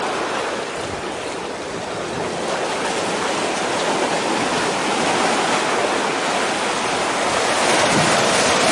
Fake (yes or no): no